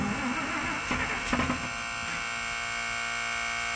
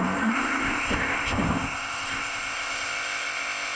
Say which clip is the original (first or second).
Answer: first